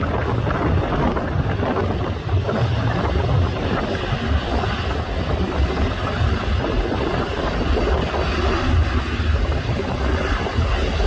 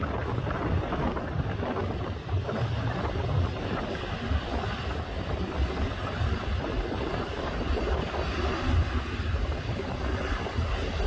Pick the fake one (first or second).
second